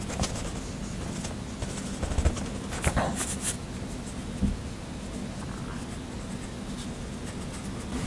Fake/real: real